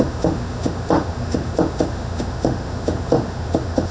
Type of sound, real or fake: fake